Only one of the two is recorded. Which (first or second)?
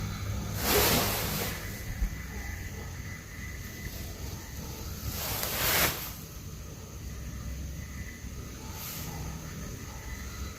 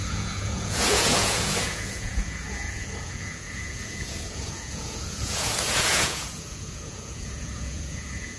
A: first